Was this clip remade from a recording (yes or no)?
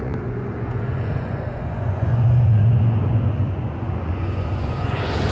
yes